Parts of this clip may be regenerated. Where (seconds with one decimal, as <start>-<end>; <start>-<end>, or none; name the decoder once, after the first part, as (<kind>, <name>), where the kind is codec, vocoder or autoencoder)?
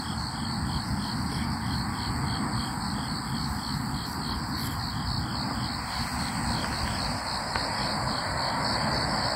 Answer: none